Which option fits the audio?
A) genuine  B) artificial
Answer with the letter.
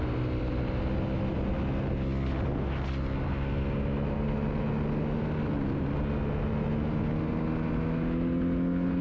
A